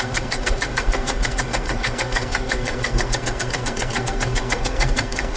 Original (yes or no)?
no